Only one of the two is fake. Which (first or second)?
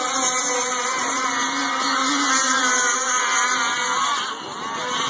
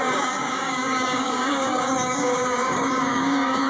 second